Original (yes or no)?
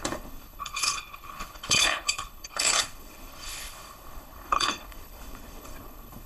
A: no